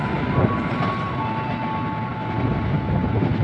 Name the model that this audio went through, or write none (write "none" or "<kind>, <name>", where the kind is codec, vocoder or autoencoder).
none